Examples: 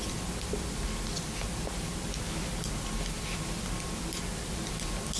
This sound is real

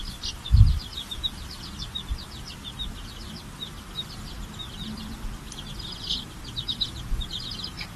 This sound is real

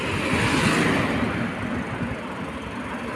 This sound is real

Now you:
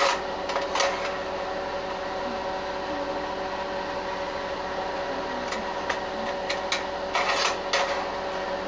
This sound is real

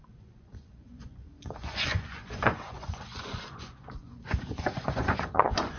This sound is fake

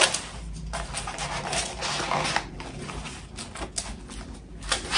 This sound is real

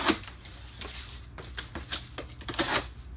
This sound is real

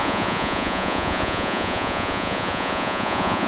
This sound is fake